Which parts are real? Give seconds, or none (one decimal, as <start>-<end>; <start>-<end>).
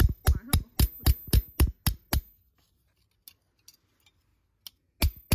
0.0-5.3